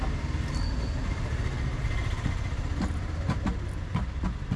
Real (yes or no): yes